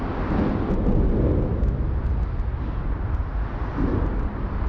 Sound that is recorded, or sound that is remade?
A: recorded